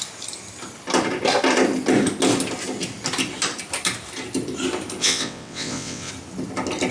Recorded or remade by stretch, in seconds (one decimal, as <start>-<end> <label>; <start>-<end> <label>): 0.0-5.0 recorded; 5.0-6.1 remade; 6.1-6.9 recorded